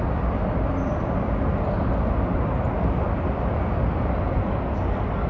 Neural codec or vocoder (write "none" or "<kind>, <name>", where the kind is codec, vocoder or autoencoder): none